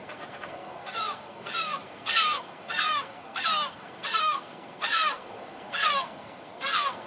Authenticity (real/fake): fake